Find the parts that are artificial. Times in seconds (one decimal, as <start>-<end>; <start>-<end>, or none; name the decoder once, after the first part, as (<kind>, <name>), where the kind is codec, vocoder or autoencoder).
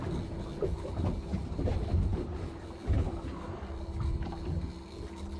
none